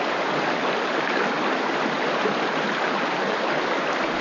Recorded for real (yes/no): yes